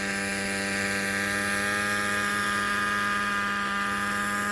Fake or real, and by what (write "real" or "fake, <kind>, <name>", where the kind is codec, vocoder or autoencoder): real